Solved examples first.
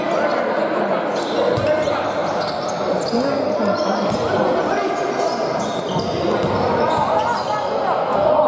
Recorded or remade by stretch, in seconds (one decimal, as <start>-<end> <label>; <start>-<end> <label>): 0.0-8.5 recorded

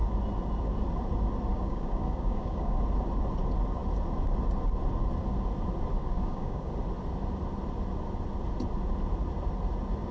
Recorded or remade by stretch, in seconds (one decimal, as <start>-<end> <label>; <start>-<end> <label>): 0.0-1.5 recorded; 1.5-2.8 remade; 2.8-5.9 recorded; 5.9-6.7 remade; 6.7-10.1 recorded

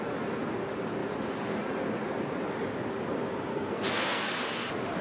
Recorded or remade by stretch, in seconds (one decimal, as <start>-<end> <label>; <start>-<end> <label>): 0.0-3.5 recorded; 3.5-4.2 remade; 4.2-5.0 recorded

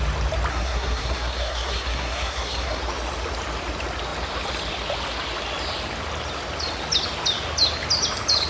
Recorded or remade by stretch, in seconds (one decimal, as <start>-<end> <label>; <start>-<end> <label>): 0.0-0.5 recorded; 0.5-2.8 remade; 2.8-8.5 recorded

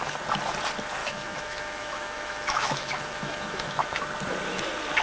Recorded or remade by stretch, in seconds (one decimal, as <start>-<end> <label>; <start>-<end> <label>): 0.0-1.0 recorded; 1.0-4.0 remade; 4.0-5.0 recorded